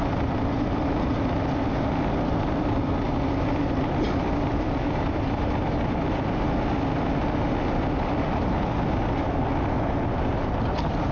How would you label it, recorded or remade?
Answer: recorded